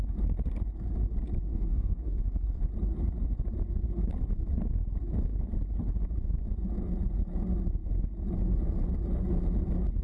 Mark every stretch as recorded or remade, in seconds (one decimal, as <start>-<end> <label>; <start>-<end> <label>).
0.0-1.5 recorded; 1.5-2.2 remade; 2.2-10.0 recorded